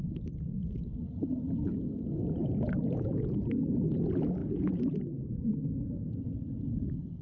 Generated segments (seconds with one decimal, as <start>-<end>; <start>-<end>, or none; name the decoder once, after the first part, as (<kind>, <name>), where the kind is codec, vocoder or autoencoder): 2.4-3.3 (vocoder, Vocos); 4.4-6.3